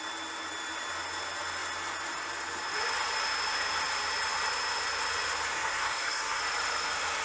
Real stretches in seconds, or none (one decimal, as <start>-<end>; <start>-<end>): 0.0-5.5; 6.4-7.2